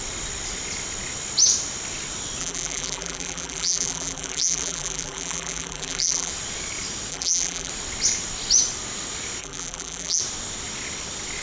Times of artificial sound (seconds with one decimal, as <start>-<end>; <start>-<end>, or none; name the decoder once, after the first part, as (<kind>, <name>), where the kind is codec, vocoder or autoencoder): 2.4-6.3 (vocoder, BigVGAN v2); 7.1-7.7; 9.4-10.2